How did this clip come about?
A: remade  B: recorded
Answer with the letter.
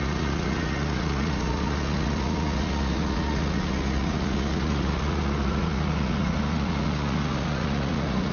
A